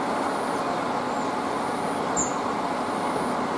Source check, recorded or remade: recorded